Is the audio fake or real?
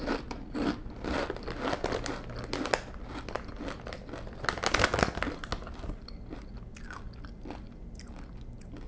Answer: real